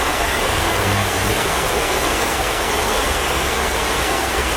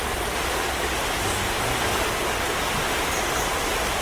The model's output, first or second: first